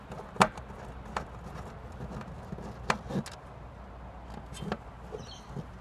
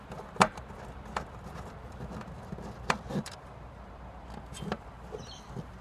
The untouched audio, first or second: first